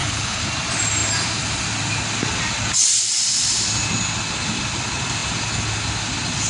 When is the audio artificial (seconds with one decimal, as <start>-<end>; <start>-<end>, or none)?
0.0-0.5